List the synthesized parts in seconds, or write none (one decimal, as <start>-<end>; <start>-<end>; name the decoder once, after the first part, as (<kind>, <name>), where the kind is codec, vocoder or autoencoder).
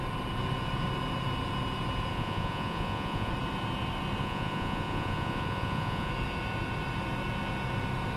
2.1-3.3 (vocoder, Vocos); 4.2-6.1